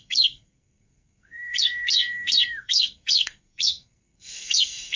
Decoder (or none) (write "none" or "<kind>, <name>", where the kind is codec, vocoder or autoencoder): codec, SNAC